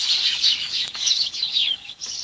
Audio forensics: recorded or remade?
remade